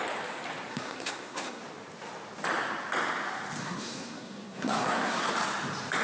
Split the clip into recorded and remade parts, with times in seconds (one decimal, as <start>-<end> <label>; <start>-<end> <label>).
0.0-0.7 recorded; 0.7-1.6 remade; 1.6-3.6 recorded; 3.6-5.3 remade; 5.3-6.0 recorded